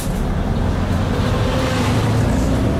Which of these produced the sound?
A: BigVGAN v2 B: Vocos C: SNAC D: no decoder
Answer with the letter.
D